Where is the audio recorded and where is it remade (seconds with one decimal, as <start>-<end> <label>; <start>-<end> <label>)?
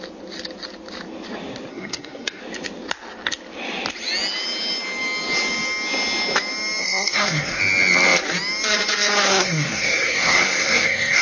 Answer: 0.0-1.7 recorded; 1.7-2.4 remade; 2.4-6.8 recorded; 6.8-7.6 remade; 7.6-9.3 recorded; 9.3-11.2 remade